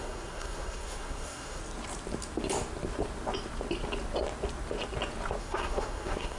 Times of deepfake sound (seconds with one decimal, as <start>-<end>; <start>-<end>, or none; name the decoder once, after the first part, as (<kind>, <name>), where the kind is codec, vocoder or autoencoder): 0.0-1.6 (codec, SNAC); 5.4-6.4